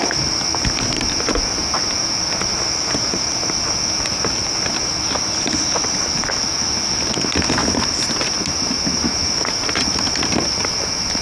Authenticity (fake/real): real